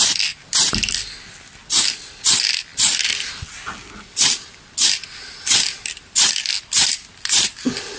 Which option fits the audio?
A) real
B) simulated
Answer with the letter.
A